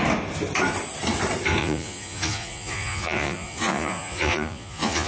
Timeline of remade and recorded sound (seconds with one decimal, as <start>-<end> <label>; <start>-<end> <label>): 0.0-1.6 recorded; 1.6-5.1 remade